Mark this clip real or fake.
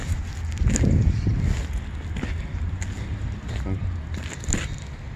real